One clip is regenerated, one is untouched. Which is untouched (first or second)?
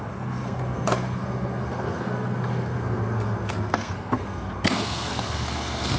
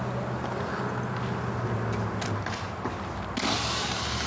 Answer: second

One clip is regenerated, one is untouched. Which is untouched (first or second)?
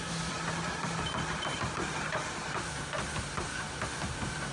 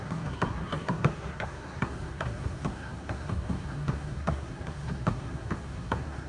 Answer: first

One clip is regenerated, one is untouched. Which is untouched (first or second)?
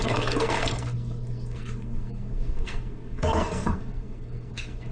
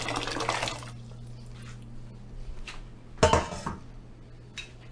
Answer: second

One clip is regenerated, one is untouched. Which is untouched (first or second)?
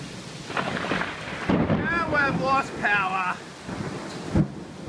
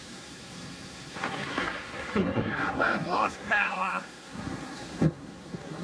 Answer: first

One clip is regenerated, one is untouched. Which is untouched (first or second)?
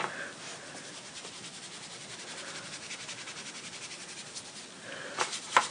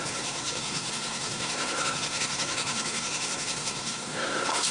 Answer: first